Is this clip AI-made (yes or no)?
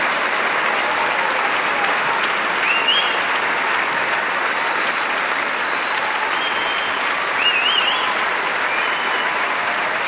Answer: no